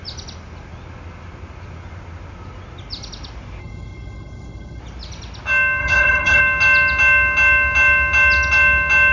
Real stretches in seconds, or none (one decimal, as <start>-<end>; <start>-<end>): 0.0-3.6; 4.8-5.8; 6.4-9.1